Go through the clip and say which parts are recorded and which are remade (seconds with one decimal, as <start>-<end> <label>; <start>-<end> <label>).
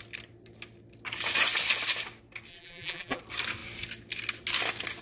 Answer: 0.0-2.5 recorded; 2.5-3.2 remade; 3.2-5.0 recorded